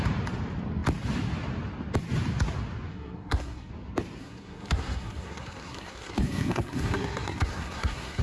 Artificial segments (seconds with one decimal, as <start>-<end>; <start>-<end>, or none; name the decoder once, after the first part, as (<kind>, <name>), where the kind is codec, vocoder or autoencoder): 2.9-3.7 (codec, SNAC); 4.2-8.2